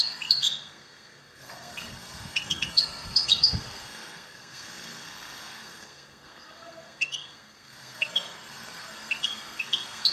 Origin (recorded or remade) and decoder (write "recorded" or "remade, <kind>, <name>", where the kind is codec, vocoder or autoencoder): remade, codec, SNAC